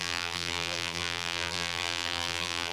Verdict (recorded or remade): remade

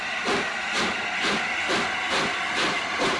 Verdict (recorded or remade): remade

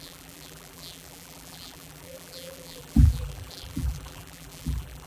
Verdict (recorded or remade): remade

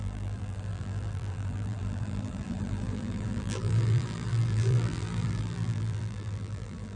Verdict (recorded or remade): remade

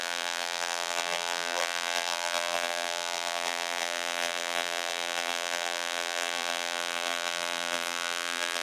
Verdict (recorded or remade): remade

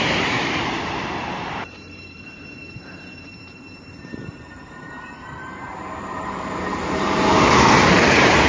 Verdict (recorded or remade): remade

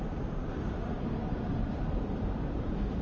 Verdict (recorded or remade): remade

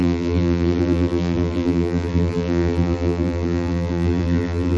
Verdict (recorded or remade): remade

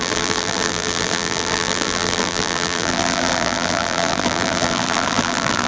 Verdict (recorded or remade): remade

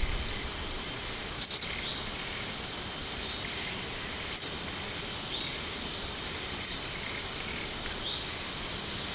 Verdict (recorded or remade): recorded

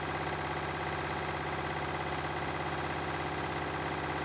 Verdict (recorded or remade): remade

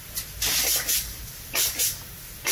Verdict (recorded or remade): remade